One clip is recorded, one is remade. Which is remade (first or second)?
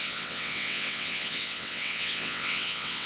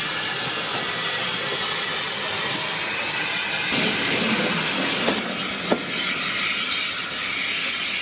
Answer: first